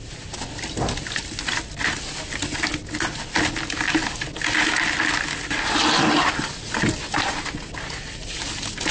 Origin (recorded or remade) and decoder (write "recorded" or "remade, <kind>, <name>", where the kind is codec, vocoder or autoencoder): recorded